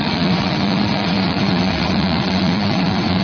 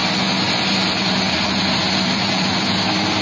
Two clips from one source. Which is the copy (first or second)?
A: first